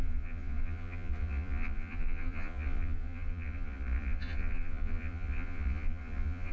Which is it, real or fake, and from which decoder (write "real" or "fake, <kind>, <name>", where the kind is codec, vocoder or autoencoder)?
fake, vocoder, Vocos